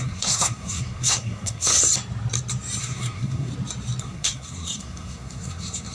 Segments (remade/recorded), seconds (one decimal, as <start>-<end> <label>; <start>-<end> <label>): 0.0-1.7 remade; 1.7-2.8 recorded; 2.8-3.5 remade; 3.5-4.0 recorded; 4.0-5.9 remade